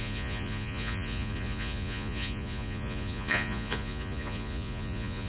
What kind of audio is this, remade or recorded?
remade